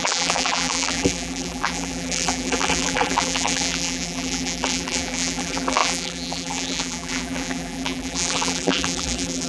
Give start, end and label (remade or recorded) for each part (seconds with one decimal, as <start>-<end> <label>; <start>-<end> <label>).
0.0-9.5 remade